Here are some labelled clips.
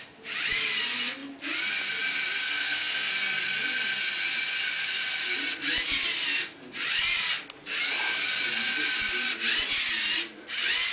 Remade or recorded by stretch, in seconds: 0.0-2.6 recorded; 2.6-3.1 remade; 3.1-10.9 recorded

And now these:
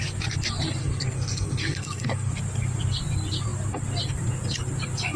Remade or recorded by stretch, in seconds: 0.0-0.8 recorded; 0.8-2.3 remade; 2.3-5.2 recorded

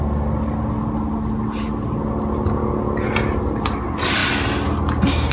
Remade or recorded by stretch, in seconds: 0.0-5.3 recorded

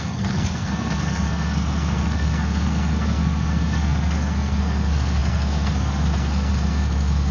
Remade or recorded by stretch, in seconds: 0.0-7.3 remade

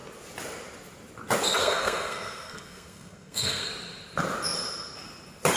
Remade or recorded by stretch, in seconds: 0.0-1.6 recorded; 1.6-3.7 remade; 3.7-5.6 recorded

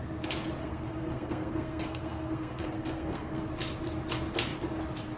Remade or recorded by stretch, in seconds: 0.0-0.6 recorded; 0.6-3.5 remade; 3.5-5.2 recorded

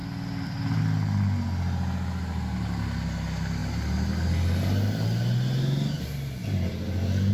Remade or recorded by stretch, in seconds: 0.0-7.3 recorded